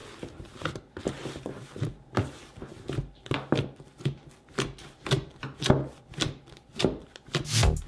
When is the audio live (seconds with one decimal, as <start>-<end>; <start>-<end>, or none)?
0.0-7.9